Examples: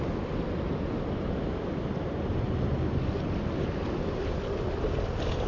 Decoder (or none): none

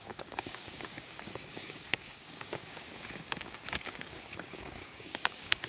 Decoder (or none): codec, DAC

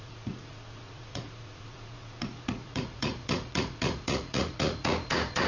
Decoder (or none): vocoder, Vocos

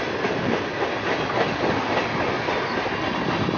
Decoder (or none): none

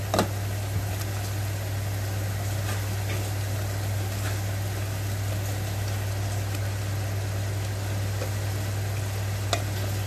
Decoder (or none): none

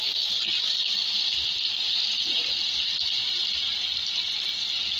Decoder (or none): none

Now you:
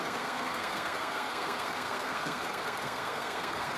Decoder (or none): codec, SNAC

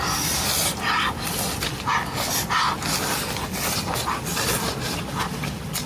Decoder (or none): none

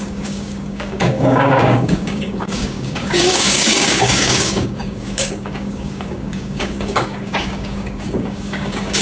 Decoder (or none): codec, DAC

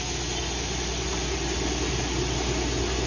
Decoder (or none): none